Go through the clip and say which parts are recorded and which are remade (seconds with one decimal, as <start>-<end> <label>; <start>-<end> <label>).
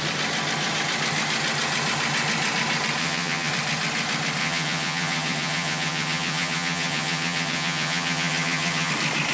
0.0-3.0 recorded; 3.0-3.5 remade; 3.5-4.4 recorded; 4.4-8.9 remade; 8.9-9.3 recorded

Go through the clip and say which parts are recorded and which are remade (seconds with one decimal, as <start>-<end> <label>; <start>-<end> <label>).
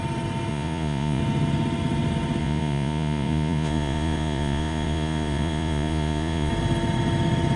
0.0-0.5 recorded; 0.5-1.2 remade; 1.2-2.4 recorded; 2.4-6.5 remade; 6.5-7.6 recorded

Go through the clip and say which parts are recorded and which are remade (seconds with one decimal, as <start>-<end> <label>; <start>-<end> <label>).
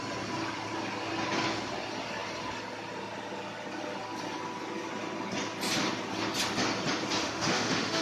0.0-7.2 recorded; 7.2-8.0 remade